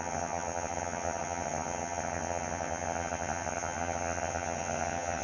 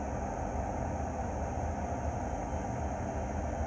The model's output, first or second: first